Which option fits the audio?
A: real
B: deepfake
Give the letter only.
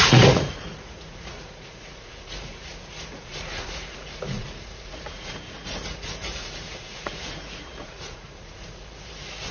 B